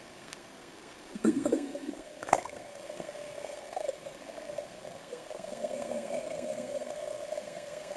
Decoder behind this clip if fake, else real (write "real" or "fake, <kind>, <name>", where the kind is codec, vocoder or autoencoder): fake, codec, SNAC